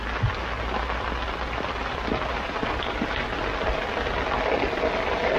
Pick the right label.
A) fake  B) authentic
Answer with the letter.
B